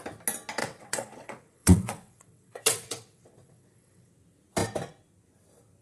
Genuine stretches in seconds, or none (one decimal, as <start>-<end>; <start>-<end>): 0.0-0.6; 4.1-5.8